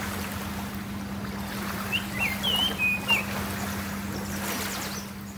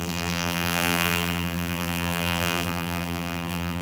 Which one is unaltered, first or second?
first